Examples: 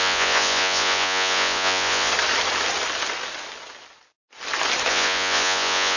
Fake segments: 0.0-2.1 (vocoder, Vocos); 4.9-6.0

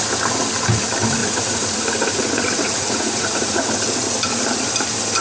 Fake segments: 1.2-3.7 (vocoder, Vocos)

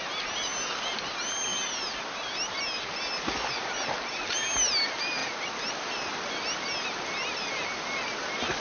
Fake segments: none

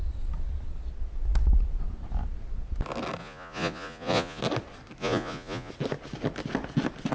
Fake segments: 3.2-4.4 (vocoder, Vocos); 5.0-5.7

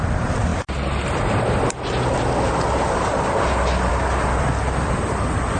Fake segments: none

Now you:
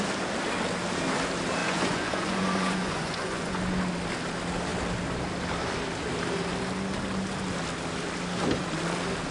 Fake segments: 1.6-3.6 (vocoder, Vocos)